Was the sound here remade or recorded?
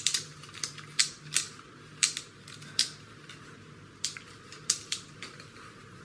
recorded